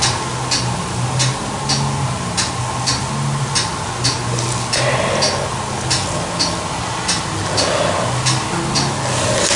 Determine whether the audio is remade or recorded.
recorded